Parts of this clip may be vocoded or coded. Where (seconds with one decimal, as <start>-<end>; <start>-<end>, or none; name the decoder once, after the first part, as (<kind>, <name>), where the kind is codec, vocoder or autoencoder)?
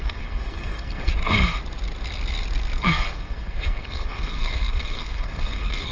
0.0-1.1 (codec, SNAC); 2.8-5.9